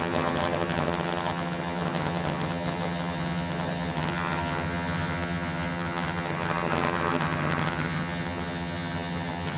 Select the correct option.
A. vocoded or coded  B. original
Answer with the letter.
A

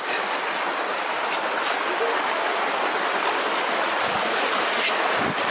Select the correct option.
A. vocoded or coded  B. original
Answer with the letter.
B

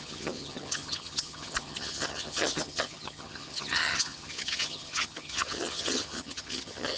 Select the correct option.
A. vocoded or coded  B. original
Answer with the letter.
A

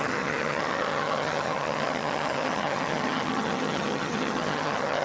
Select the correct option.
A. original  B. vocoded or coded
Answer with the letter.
B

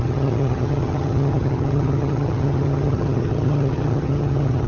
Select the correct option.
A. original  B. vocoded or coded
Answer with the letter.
B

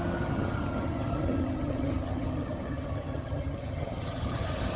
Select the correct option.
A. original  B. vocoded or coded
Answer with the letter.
B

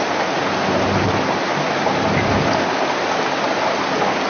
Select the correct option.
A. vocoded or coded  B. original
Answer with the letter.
B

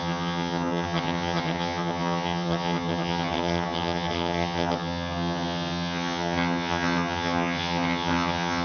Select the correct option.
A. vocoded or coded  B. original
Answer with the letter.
A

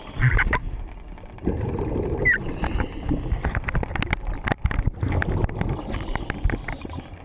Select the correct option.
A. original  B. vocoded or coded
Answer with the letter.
A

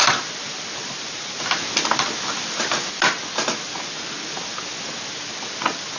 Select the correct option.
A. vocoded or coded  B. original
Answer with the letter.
B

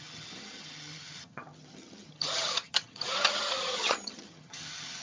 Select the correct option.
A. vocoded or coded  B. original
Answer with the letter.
A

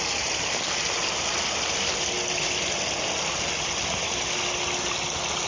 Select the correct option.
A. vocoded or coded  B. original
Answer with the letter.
B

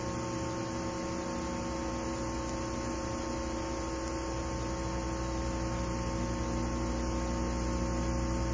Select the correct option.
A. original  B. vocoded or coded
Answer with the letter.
A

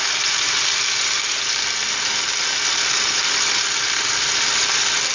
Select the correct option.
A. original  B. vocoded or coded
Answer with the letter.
A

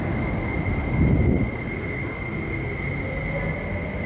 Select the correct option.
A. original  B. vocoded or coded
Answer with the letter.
A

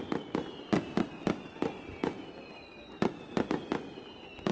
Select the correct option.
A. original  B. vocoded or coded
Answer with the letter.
A